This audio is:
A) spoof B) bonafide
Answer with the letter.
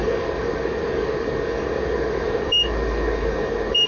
A